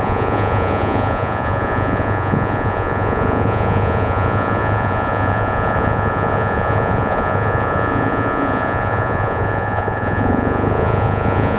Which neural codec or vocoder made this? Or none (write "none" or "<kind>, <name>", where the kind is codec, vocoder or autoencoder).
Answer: vocoder, Vocos